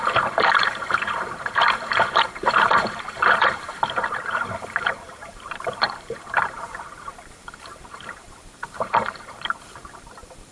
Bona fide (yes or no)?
no